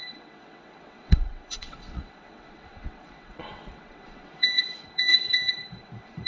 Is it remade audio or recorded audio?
remade